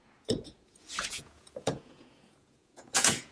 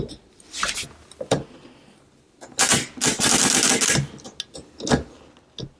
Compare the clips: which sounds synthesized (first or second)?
first